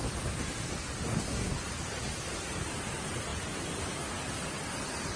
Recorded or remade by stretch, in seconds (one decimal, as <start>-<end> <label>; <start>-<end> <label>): 0.0-1.1 recorded; 1.1-1.6 remade; 1.6-5.2 recorded